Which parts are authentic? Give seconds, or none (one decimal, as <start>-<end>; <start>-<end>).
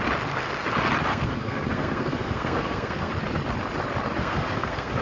0.0-1.1; 3.1-4.2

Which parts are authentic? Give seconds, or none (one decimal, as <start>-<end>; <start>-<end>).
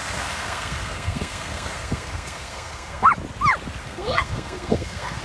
3.1-3.8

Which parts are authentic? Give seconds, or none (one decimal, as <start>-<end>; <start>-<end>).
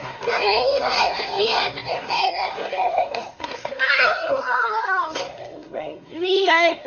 none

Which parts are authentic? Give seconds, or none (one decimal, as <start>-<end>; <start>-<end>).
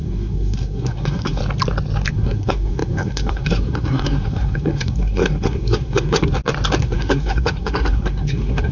1.4-2.1; 6.3-6.8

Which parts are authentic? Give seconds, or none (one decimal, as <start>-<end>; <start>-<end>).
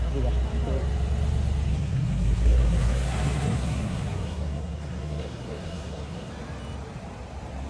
0.0-1.7; 6.3-7.7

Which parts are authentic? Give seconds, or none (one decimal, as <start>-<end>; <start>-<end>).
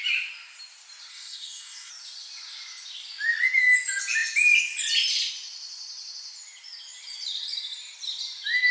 0.0-1.1; 1.9-8.7